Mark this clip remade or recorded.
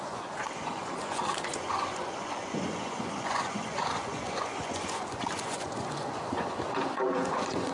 remade